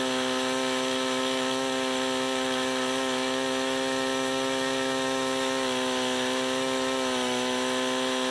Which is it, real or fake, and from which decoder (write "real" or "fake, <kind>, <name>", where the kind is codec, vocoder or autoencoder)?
fake, autoencoder, DAC-VAE